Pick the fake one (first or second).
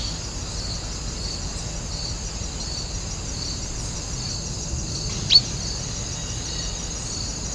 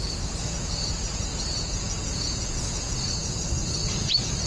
second